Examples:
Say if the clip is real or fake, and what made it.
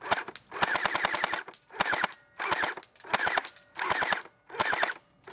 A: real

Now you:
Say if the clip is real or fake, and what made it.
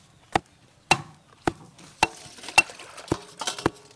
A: real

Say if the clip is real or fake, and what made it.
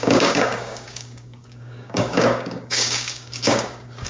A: fake, codec, DAC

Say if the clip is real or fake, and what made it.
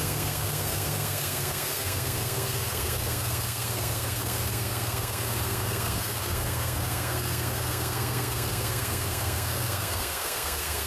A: fake, codec, SNAC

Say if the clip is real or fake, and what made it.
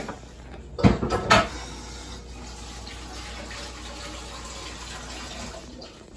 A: real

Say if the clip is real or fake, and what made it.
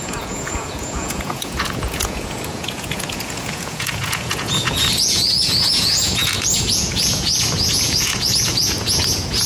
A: fake, vocoder, Vocos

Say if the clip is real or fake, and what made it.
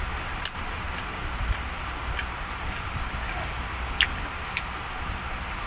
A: real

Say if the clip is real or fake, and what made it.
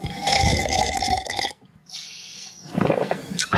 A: fake, codec, SNAC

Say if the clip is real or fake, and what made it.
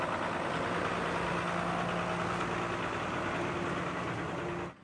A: real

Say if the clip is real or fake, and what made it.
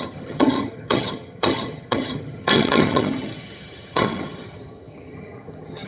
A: fake, vocoder, HiFi-GAN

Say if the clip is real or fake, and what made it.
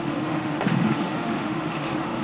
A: fake, autoencoder, DAC-VAE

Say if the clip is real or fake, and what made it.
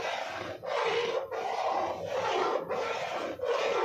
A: real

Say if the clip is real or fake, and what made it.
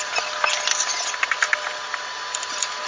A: real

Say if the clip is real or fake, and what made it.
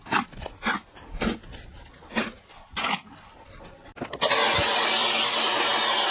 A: real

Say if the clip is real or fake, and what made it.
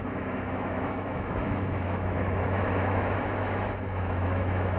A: fake, autoencoder, DAC-VAE